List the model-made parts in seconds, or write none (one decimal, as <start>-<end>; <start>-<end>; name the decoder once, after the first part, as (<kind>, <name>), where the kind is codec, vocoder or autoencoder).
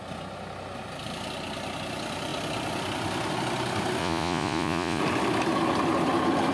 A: 4.0-5.0 (vocoder, Vocos)